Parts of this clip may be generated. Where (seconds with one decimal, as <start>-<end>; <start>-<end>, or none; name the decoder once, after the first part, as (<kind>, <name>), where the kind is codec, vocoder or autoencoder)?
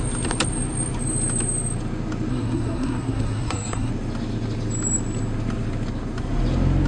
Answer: 2.3-3.9 (codec, SNAC)